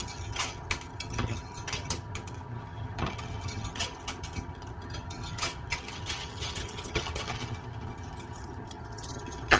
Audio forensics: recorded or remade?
remade